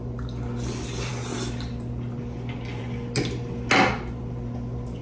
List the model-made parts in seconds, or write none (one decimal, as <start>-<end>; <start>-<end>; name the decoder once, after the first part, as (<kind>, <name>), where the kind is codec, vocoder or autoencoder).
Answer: none